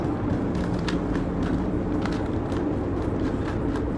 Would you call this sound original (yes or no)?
yes